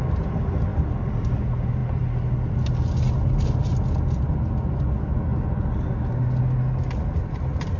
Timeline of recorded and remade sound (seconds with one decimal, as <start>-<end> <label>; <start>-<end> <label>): 0.0-7.8 recorded